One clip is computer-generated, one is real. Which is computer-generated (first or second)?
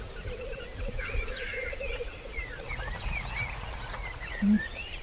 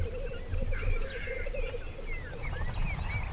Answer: first